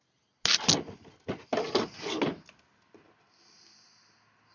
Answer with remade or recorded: recorded